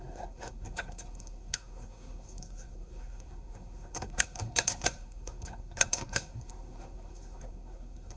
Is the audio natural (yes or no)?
no